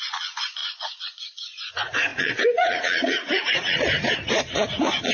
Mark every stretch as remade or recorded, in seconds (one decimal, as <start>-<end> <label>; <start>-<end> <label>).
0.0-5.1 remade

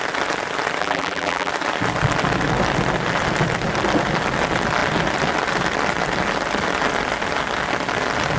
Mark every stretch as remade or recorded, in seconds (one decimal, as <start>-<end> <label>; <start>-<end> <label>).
0.0-0.8 recorded; 0.8-1.5 remade; 1.5-8.4 recorded

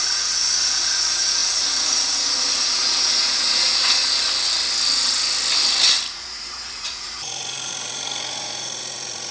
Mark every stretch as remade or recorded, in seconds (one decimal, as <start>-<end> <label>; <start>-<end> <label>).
0.0-4.0 remade; 4.0-6.1 recorded; 6.1-9.3 remade